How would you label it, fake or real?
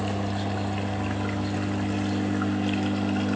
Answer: real